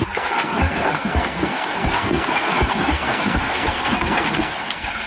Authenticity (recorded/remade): remade